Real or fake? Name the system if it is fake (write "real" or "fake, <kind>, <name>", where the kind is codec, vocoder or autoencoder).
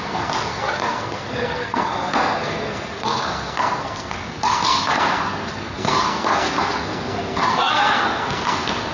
fake, codec, SNAC